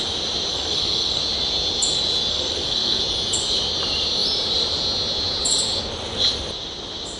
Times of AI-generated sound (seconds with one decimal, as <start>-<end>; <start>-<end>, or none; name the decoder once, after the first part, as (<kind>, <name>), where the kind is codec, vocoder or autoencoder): 0.5-1.2 (codec, SNAC); 2.3-3.0